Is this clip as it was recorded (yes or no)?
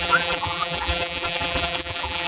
no